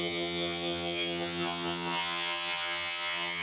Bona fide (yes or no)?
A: no